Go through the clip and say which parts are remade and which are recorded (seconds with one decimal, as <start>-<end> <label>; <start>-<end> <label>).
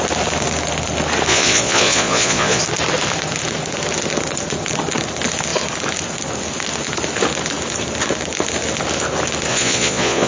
0.0-1.3 recorded; 1.3-2.6 remade; 2.6-9.5 recorded; 9.5-10.3 remade